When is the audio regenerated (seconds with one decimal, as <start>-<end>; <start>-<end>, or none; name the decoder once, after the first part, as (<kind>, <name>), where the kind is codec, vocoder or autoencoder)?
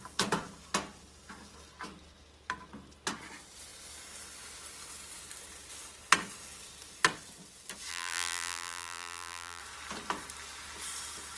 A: 7.9-9.6 (vocoder, BigVGAN v2)